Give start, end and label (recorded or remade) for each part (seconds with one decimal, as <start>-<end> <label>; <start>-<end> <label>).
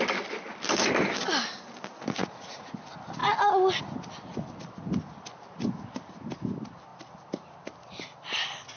0.0-2.2 recorded; 2.2-2.7 remade; 2.7-8.8 recorded